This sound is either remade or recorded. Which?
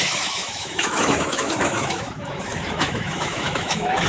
remade